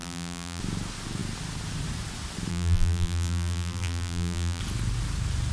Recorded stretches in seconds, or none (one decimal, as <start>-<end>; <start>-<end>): 0.6-2.5; 4.6-5.5